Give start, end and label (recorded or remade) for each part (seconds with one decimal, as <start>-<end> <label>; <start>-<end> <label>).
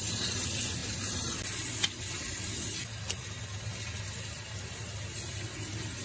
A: 0.0-6.0 recorded